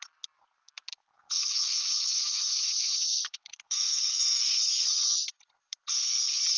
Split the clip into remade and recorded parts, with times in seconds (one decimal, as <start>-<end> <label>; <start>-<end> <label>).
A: 0.0-1.0 recorded; 1.0-5.0 remade; 5.0-6.6 recorded